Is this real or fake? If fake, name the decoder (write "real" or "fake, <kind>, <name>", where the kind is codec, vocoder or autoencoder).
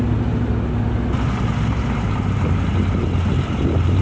real